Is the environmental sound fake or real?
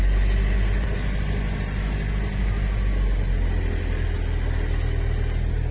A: real